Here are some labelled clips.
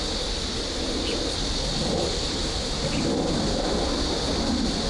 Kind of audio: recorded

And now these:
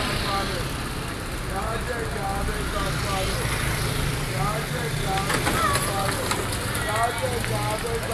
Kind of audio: recorded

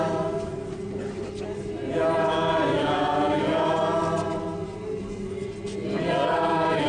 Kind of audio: recorded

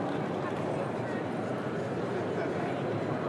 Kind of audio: remade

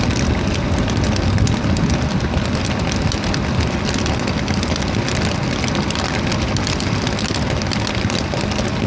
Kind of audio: recorded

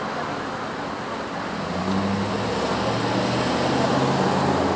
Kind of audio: recorded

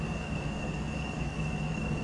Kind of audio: remade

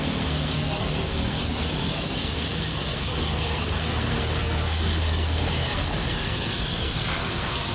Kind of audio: remade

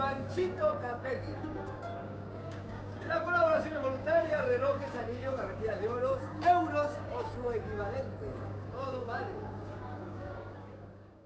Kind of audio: remade